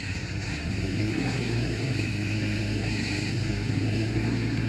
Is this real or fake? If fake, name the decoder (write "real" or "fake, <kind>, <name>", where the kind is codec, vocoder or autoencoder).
fake, codec, SNAC